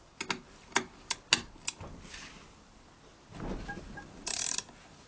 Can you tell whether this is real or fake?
real